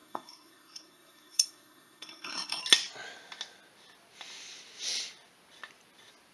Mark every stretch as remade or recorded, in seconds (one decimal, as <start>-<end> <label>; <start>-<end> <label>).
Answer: 0.0-2.6 remade; 2.6-6.3 recorded